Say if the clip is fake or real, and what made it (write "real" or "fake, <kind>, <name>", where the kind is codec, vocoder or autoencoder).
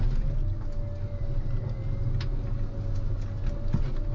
real